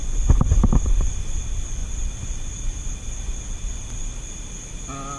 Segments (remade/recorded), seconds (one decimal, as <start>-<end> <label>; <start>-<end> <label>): 0.0-1.8 remade; 1.8-5.2 recorded